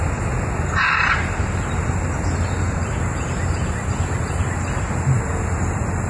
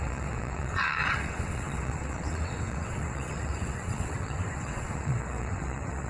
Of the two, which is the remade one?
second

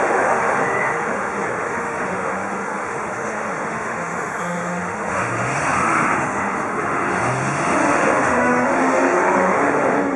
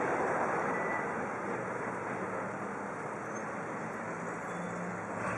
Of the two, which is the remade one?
first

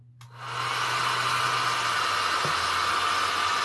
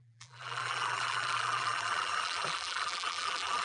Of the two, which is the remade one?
second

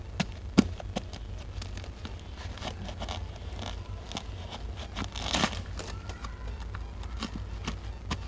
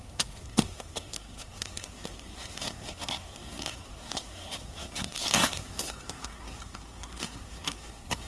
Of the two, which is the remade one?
second